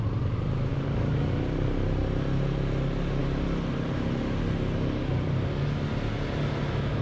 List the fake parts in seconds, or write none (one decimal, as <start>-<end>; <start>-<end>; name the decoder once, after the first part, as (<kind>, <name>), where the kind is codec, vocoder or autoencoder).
0.7-1.3 (codec, DAC)